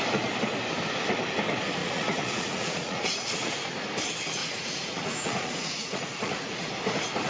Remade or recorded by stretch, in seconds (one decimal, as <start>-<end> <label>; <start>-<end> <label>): 0.0-1.8 recorded; 1.8-3.5 remade; 3.5-4.4 recorded; 4.4-6.7 remade; 6.7-7.3 recorded